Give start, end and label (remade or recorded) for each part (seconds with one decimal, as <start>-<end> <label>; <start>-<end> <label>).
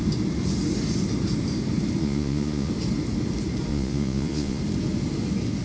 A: 0.0-2.0 recorded; 2.0-2.7 remade; 2.7-3.7 recorded; 3.7-4.6 remade; 4.6-5.6 recorded